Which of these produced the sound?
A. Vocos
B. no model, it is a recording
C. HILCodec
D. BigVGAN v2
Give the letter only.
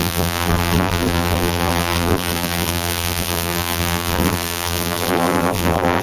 D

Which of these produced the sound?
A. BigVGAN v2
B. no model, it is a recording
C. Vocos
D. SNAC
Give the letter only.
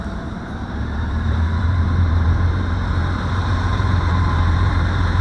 A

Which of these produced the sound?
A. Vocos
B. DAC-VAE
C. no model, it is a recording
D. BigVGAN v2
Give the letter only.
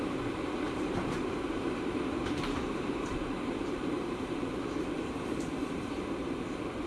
D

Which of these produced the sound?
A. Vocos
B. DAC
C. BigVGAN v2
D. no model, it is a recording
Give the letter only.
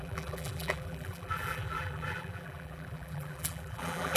C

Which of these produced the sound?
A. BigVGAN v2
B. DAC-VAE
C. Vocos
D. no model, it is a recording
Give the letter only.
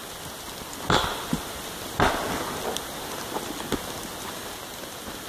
D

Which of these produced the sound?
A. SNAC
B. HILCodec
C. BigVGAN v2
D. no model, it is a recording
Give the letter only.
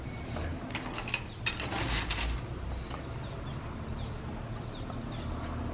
D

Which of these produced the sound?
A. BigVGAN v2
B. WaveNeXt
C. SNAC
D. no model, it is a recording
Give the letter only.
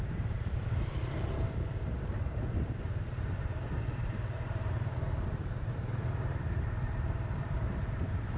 A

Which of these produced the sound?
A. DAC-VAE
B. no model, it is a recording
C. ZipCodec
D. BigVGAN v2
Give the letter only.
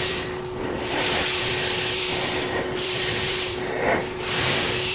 D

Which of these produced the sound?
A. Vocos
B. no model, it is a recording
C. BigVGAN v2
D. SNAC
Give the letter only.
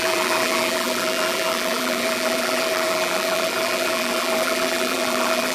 C